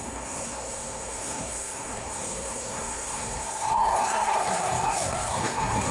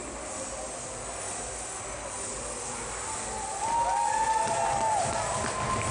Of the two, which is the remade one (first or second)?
first